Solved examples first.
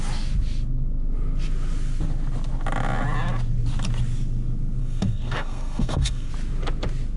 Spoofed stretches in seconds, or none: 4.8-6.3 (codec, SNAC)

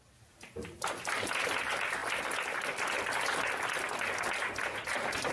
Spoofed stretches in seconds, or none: none

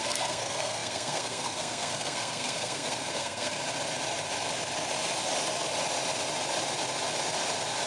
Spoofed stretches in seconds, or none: 0.0-3.6 (codec, SNAC)

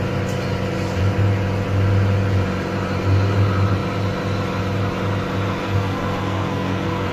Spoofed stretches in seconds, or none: 5.6-7.1 (codec, SNAC)